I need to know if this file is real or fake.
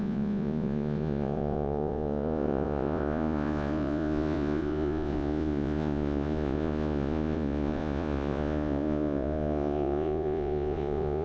fake